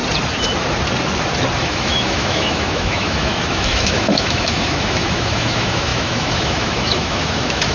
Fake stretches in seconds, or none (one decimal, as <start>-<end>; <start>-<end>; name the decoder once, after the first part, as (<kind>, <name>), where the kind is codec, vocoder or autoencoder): 1.6-7.7 (autoencoder, DAC-VAE)